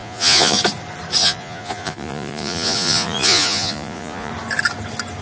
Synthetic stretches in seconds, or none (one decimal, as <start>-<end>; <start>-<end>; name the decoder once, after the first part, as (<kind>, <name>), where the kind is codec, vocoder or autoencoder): 0.0-0.6 (vocoder, Vocos); 1.2-4.3